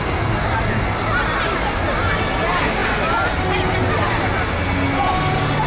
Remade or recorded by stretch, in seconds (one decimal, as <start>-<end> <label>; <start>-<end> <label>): 0.0-5.7 recorded